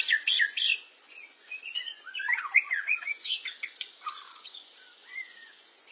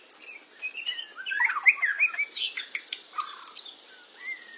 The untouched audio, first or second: second